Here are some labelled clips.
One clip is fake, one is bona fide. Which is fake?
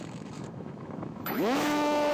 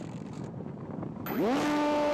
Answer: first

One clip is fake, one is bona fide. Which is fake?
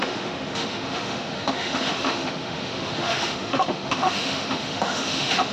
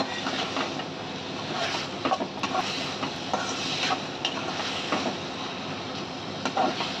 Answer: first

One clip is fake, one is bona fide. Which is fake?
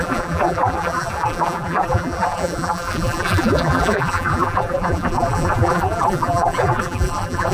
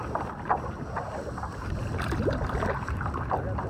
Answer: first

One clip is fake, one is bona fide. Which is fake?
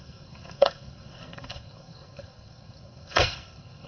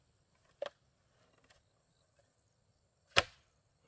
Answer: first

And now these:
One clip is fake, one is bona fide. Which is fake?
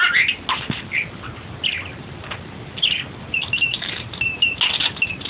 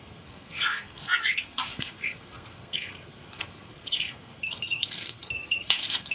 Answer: second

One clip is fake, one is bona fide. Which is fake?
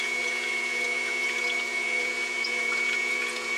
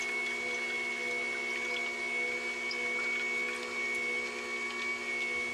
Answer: first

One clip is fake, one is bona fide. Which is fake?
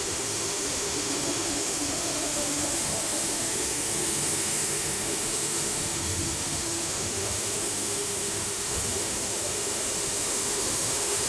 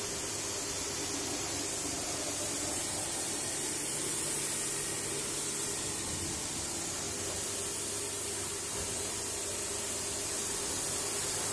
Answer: first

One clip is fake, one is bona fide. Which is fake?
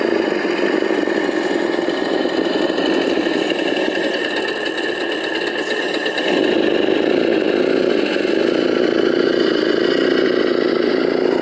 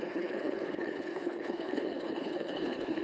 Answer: second